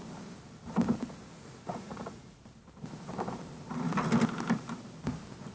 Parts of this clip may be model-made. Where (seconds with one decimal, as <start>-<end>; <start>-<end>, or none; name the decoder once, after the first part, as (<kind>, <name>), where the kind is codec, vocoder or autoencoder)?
1.3-2.4 (vocoder, Vocos)